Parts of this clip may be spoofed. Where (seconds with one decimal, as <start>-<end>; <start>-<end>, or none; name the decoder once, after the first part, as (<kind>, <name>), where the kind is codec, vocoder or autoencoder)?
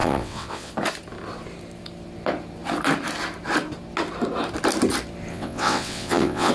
0.0-0.7 (vocoder, WaveNeXt); 5.3-6.5